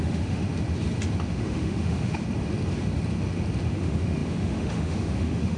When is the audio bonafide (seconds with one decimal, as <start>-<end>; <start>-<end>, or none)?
0.5-1.3; 2.2-3.7